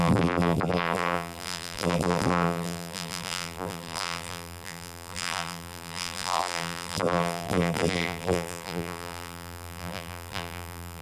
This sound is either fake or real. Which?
fake